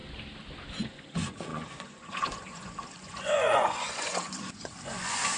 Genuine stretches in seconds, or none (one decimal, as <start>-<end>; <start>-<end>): 0.0-0.9